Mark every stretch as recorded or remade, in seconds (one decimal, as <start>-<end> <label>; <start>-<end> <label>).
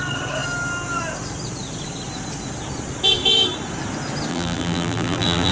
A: 0.0-4.3 recorded; 4.3-5.5 remade